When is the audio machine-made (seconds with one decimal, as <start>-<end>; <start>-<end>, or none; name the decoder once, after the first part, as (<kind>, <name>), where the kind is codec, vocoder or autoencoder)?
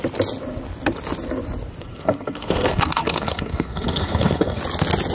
1.8-4.6 (codec, SNAC)